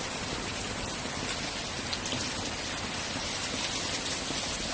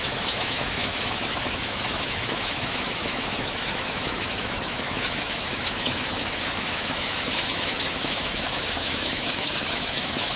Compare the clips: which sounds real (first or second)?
first